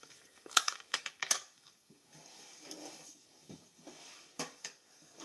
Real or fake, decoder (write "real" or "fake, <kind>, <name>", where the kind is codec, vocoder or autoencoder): fake, codec, DAC